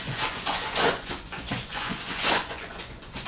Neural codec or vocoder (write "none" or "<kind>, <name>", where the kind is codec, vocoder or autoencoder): vocoder, Vocos